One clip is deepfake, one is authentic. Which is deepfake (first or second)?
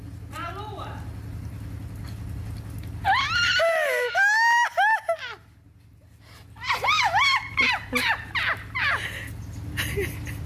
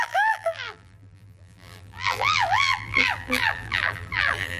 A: second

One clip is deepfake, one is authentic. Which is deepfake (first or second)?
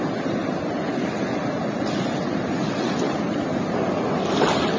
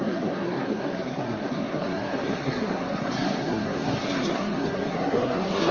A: second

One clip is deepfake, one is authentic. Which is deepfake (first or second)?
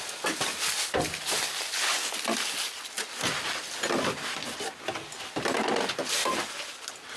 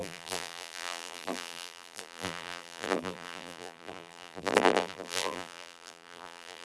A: second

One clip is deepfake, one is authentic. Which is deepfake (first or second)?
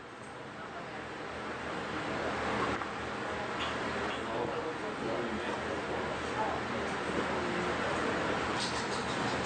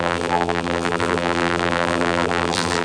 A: second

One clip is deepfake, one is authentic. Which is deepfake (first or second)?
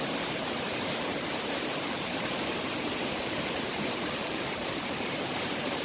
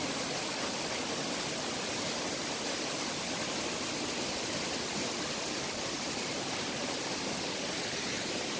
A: first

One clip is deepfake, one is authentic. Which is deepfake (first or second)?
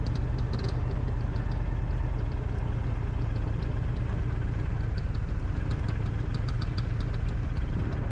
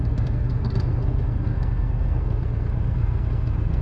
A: second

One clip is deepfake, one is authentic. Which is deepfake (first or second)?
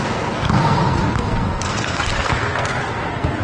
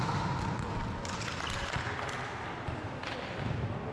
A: first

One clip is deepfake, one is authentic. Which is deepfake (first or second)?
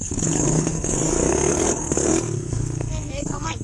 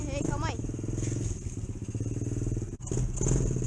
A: first